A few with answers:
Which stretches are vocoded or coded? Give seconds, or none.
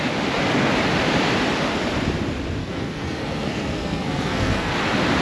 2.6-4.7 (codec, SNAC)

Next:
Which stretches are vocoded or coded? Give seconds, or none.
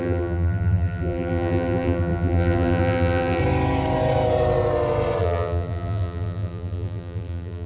0.0-3.4 (vocoder, BigVGAN v2); 5.2-7.7